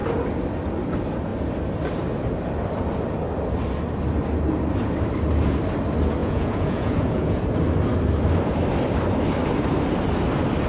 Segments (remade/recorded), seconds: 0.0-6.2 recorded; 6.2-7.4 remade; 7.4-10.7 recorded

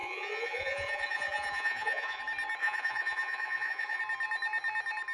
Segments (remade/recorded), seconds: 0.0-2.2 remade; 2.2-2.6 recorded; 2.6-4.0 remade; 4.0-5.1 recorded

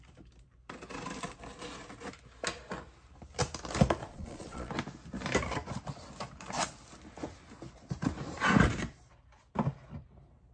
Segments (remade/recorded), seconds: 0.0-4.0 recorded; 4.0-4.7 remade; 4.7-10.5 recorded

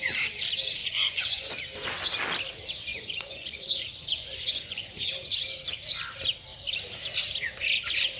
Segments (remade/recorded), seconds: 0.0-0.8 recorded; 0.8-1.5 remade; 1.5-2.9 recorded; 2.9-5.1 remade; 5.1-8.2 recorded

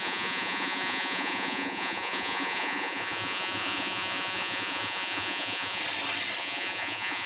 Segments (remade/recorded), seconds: 0.0-5.8 remade; 5.8-6.4 recorded; 6.4-7.3 remade